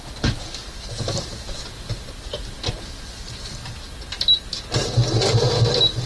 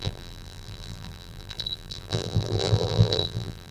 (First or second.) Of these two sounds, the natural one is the first